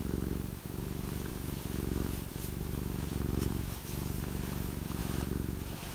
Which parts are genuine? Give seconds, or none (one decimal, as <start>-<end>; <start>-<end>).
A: none